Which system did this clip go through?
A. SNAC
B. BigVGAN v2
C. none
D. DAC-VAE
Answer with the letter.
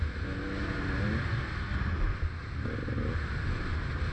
C